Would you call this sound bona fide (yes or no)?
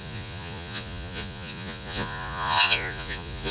no